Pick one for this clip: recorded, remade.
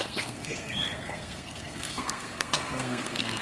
remade